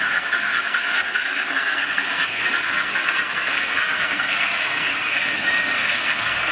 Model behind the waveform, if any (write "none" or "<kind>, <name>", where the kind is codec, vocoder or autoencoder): codec, SNAC